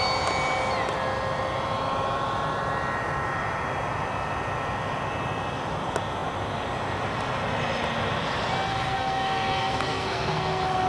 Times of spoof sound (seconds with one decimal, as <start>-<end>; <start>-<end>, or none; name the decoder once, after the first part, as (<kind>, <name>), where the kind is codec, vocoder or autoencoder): 8.7-10.9 (codec, SNAC)